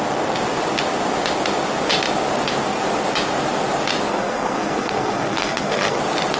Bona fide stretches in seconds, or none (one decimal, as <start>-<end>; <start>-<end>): 0.0-4.1; 6.0-6.4